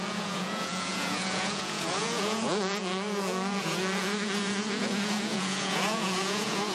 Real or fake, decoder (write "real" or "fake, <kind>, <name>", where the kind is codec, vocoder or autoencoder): fake, vocoder, Vocos